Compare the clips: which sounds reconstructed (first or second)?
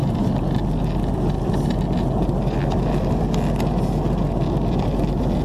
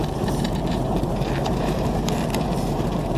second